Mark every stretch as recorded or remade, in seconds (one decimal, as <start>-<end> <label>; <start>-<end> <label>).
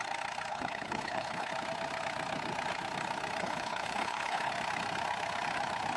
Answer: 0.0-0.5 recorded; 0.5-1.5 remade; 1.5-3.4 recorded; 3.4-4.5 remade; 4.5-6.0 recorded